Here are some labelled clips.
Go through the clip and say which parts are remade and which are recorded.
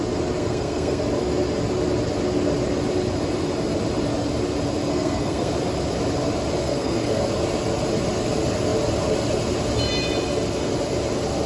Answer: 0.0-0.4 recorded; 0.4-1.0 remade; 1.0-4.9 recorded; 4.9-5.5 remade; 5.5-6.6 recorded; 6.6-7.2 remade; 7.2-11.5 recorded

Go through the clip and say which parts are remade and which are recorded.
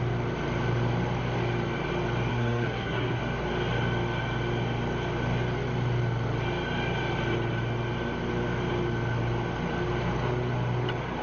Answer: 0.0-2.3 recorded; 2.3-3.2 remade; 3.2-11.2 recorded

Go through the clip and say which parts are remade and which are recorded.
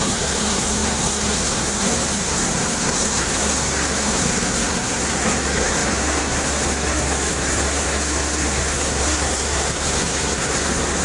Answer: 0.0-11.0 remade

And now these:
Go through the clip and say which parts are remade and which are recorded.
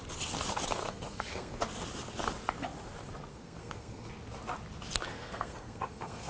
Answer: 0.0-0.8 recorded; 0.8-1.6 remade; 1.6-3.3 recorded; 3.3-4.1 remade; 4.1-5.1 recorded; 5.1-6.3 remade